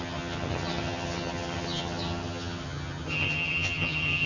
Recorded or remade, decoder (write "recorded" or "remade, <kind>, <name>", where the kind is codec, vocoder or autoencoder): remade, vocoder, HiFi-GAN